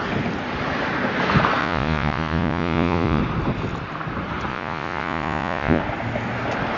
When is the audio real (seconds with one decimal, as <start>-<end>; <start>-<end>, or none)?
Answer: 0.0-1.6; 3.2-4.5; 5.8-6.8